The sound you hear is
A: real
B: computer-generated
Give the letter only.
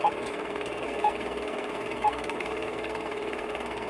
B